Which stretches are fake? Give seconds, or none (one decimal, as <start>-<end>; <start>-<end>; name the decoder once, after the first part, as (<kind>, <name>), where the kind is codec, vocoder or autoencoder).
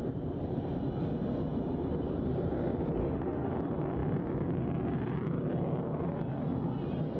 3.0-3.5 (autoencoder, DAC-VAE)